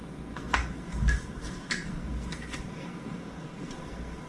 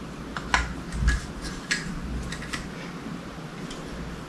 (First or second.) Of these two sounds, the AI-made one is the first